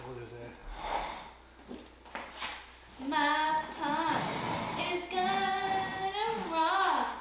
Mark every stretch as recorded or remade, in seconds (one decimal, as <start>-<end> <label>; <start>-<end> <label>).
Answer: 0.0-3.6 recorded; 3.6-4.9 remade; 4.9-7.2 recorded